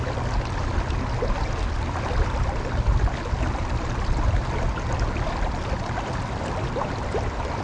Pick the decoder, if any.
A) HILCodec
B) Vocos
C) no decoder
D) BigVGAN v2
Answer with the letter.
C